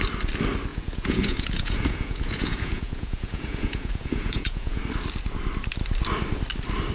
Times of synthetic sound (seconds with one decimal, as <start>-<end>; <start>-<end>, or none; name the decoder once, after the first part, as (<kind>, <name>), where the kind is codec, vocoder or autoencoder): 0.7-4.8 (vocoder, Vocos)